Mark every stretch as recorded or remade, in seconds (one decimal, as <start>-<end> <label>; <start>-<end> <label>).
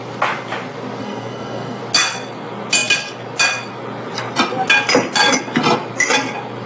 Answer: 0.0-1.0 recorded; 1.0-1.8 remade; 1.8-6.7 recorded